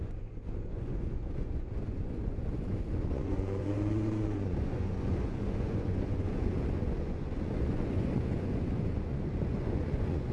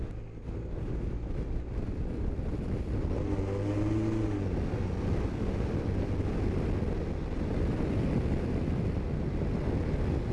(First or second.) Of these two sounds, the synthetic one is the first